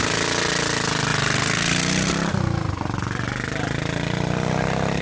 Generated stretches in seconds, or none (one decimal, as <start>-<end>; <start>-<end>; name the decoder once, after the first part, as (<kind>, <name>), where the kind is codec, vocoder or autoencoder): none